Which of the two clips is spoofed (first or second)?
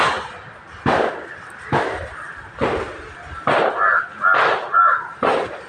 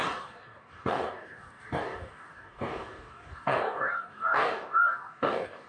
second